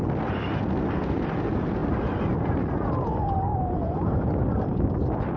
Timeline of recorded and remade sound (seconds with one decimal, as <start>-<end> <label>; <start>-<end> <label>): 0.0-5.4 recorded